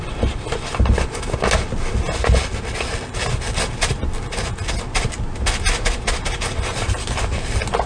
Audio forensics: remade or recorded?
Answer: recorded